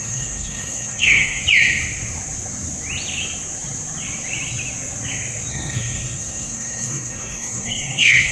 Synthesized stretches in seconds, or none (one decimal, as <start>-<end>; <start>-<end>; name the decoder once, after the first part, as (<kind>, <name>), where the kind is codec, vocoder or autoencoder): 0.0-1.4 (codec, SNAC); 5.5-8.3